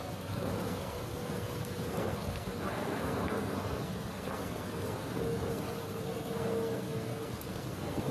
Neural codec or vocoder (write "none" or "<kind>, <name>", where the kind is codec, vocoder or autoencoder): codec, SNAC